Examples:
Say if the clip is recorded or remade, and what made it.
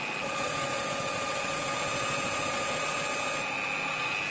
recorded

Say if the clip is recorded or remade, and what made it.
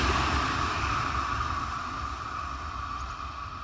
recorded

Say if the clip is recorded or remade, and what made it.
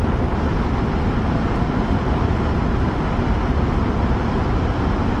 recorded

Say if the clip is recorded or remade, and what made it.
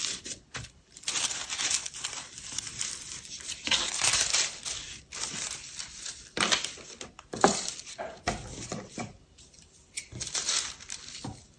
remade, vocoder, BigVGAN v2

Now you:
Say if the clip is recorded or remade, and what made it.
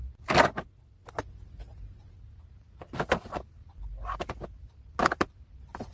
recorded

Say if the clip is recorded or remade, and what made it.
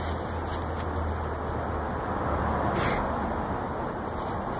recorded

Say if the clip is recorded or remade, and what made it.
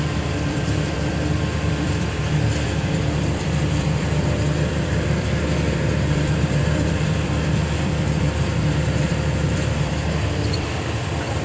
remade, vocoder, BigVGAN v2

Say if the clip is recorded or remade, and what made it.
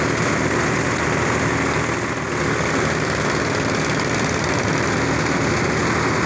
recorded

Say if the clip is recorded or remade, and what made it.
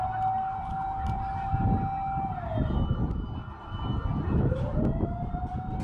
recorded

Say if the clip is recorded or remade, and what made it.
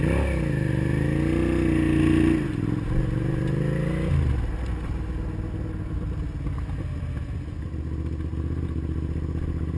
recorded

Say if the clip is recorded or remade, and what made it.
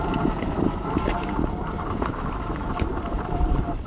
remade, vocoder, BigVGAN v2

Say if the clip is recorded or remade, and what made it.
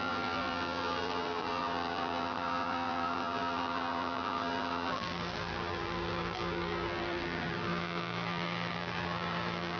remade, vocoder, BigVGAN v2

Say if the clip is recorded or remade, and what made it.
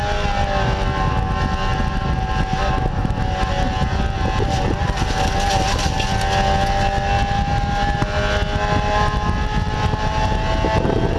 recorded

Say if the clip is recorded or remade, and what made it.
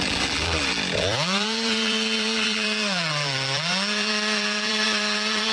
remade, vocoder, BigVGAN v2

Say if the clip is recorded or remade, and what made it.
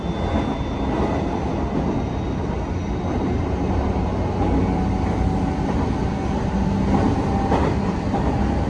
recorded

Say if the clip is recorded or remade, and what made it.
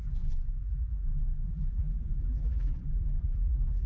remade, vocoder, BigVGAN v2